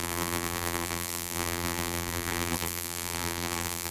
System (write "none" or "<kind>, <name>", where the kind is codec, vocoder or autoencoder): vocoder, BigVGAN v2